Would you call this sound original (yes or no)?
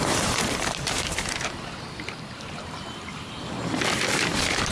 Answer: no